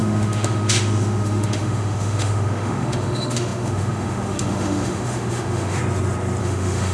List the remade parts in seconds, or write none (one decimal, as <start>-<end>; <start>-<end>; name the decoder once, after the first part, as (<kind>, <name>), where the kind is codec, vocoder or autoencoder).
0.0-5.8 (autoencoder, DAC-VAE); 6.4-6.9